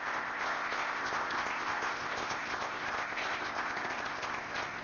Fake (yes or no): yes